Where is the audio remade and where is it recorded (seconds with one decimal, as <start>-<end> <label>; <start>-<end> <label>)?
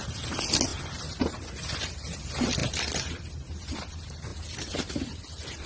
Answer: 0.0-0.7 recorded; 0.7-1.9 remade; 1.9-4.3 recorded; 4.3-5.7 remade